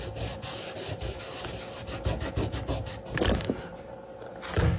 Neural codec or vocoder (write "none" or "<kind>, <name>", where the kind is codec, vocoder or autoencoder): none